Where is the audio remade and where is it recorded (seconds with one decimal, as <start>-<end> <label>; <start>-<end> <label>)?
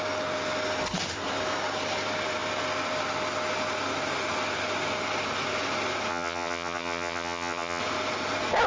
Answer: 0.0-6.1 recorded; 6.1-7.8 remade; 7.8-8.7 recorded